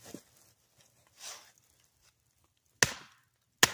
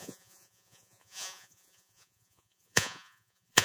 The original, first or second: first